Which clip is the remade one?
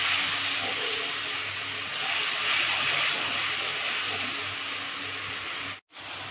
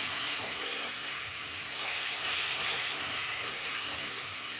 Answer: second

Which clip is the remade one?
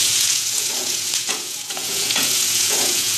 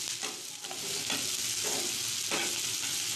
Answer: first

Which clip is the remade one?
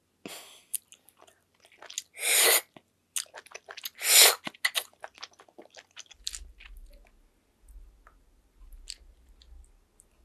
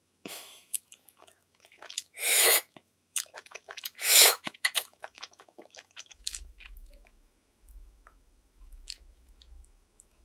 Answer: second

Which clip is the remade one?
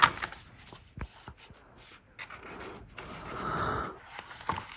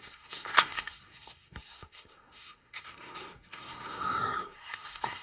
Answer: second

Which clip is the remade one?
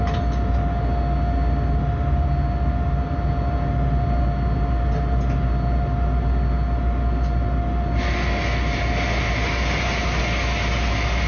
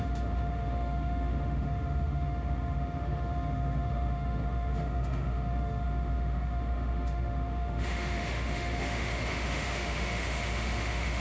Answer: second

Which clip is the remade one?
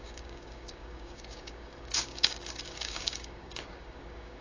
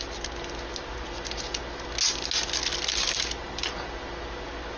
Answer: first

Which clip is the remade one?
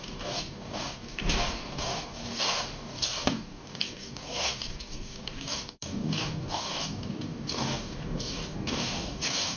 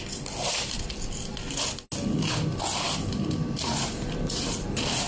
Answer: first